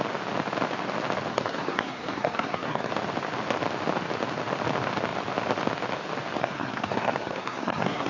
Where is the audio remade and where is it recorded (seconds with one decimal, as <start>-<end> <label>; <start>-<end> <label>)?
0.0-1.3 recorded; 1.3-2.9 remade; 2.9-6.4 recorded; 6.4-8.1 remade